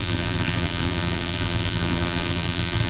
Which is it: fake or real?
fake